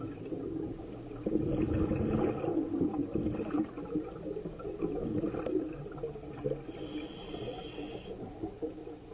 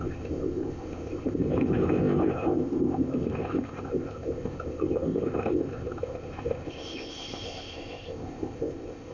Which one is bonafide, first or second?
first